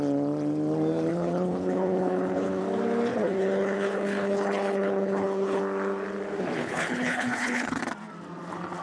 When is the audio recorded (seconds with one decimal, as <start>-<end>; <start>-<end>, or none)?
0.0-1.1; 2.6-3.1; 5.6-6.6; 7.8-8.8